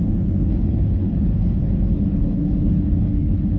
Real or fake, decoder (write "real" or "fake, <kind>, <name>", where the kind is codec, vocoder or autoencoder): fake, codec, HILCodec